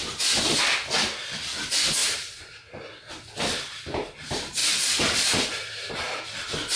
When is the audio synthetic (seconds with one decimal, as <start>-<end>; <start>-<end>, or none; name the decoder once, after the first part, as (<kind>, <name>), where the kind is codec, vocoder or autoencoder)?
2.0-2.8 (vocoder, BigVGAN v2); 4.6-6.2